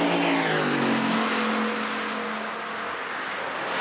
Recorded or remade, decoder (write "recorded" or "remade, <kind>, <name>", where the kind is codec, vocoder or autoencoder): recorded